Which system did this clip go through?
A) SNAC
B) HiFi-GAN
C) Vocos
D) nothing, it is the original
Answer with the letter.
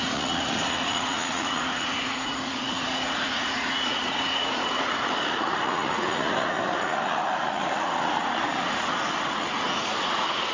C